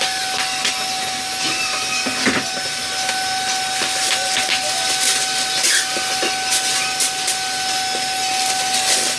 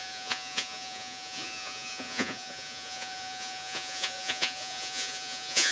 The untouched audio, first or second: first